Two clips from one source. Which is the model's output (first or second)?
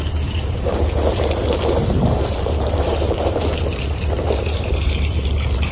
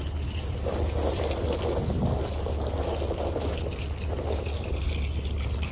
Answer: first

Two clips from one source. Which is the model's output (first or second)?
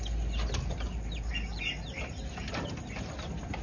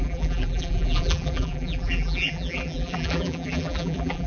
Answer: second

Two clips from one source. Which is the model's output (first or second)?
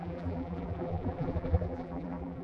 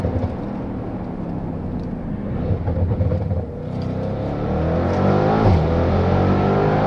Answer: first